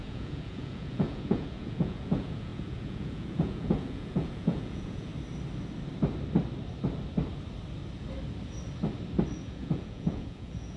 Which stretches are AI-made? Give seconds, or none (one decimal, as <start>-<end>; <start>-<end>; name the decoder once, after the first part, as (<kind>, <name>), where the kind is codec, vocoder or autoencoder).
0.0-5.1 (vocoder, Vocos); 9.4-10.8